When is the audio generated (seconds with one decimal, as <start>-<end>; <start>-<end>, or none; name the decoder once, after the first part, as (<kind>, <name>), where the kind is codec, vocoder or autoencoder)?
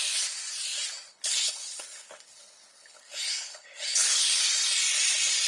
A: 1.1-4.4 (codec, HILCodec)